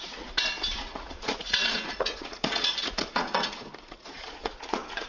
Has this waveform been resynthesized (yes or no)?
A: yes